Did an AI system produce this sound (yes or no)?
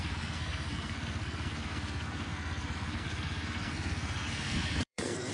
yes